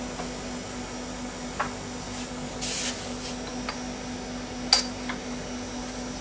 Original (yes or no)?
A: yes